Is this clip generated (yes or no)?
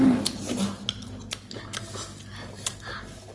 no